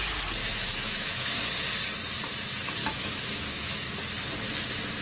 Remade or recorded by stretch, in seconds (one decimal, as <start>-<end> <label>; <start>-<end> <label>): 0.0-0.4 recorded; 0.4-1.4 remade; 1.4-2.8 recorded; 2.8-3.9 remade; 3.9-5.0 recorded